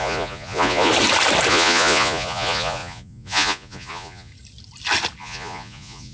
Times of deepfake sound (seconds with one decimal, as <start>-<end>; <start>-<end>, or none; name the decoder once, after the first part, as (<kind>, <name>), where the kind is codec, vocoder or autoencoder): 0.0-0.9 (vocoder, Vocos); 1.5-4.3; 5.2-6.1